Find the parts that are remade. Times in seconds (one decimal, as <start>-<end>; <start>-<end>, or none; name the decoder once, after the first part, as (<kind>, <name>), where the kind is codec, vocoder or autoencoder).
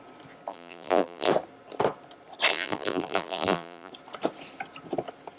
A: 0.5-1.3 (vocoder, BigVGAN v2); 2.5-3.9